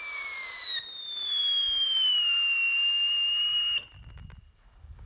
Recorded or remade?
recorded